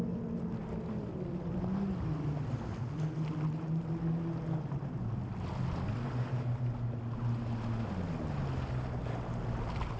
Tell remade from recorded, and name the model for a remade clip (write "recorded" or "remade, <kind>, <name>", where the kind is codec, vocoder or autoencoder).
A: recorded